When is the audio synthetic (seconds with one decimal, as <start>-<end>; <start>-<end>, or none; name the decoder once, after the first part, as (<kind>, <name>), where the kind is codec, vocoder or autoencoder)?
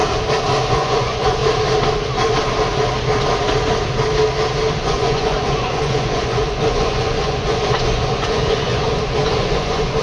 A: 0.7-1.4 (vocoder, Vocos); 4.8-10.0